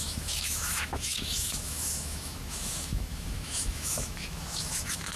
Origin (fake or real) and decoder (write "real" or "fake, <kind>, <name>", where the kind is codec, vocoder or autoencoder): fake, autoencoder, DAC-VAE